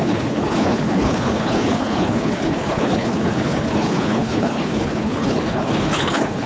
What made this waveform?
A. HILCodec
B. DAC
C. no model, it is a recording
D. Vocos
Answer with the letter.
A